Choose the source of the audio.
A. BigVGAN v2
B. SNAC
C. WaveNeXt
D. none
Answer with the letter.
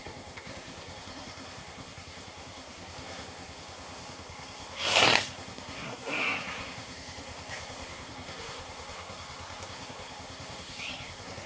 B